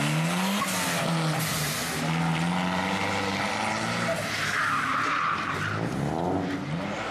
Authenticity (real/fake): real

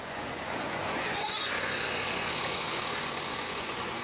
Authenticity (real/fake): fake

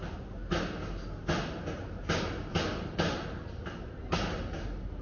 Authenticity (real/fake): real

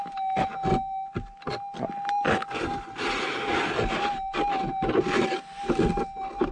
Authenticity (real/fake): real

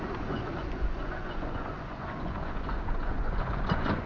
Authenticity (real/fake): fake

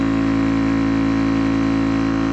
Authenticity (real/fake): real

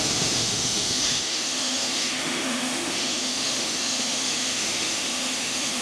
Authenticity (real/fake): fake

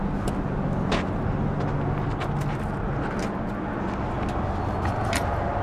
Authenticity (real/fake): real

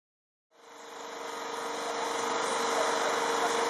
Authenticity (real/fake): real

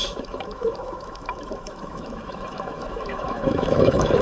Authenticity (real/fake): fake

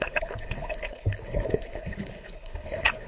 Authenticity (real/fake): fake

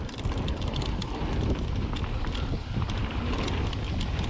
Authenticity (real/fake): real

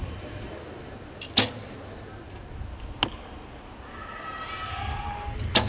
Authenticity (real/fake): real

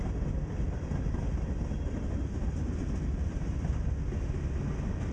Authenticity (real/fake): real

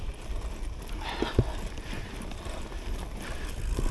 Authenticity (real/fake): real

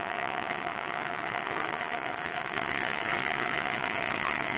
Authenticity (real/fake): fake